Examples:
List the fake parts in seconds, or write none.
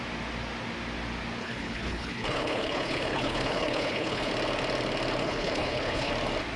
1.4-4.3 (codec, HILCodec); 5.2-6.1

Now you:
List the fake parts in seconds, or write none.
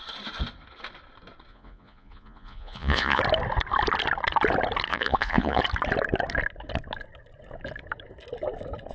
1.5-3.2 (vocoder, Vocos); 4.9-5.6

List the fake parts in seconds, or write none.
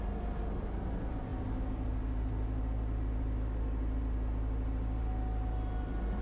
none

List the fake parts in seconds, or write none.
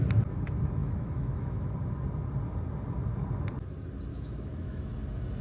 0.8-1.7 (autoencoder, DAC-VAE); 4.1-4.9